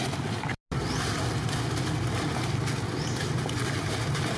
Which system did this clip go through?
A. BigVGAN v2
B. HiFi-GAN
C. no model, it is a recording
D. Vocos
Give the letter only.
C